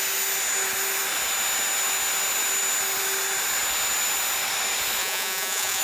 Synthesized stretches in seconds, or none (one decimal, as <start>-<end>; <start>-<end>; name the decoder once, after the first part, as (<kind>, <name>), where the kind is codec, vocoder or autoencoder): 5.0-5.8 (vocoder, Vocos)